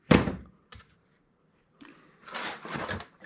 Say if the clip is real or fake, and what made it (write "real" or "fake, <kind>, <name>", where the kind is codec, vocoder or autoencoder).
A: fake, vocoder, BigVGAN v2